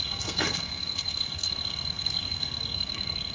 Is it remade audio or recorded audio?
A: remade